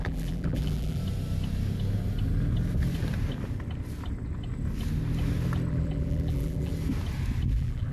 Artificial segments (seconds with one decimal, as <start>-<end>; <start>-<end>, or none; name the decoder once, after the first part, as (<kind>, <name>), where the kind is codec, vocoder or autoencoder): 0.0-1.0 (vocoder, BigVGAN v2); 5.7-6.7; 7.5-7.9